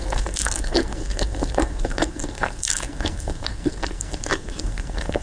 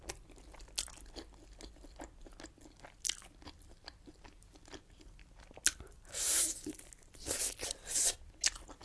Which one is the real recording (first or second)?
second